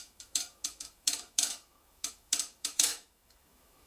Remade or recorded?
remade